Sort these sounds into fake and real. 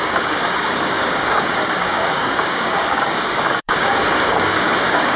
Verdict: fake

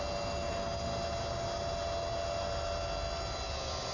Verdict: real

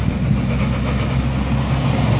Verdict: real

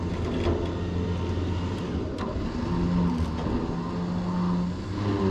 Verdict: real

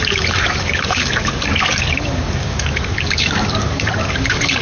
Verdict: fake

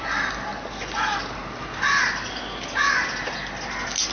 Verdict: real